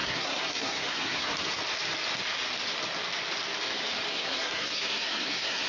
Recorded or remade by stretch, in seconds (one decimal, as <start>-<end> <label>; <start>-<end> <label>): 0.0-1.6 remade; 1.6-4.1 recorded; 4.1-5.7 remade